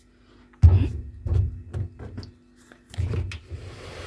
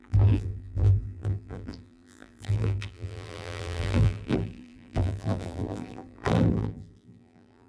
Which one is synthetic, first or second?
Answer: second